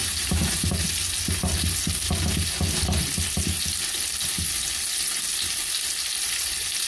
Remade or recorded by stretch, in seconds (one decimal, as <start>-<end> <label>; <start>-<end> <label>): 0.0-0.9 remade; 0.9-6.9 recorded